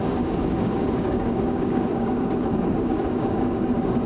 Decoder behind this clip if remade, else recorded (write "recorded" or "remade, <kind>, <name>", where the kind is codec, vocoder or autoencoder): remade, codec, DAC